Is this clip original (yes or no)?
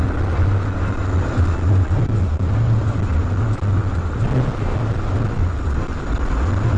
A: yes